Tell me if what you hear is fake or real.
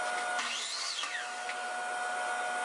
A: real